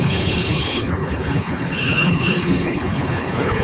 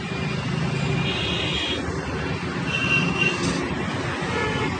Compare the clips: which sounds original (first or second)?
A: second